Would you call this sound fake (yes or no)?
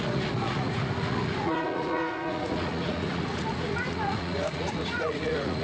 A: yes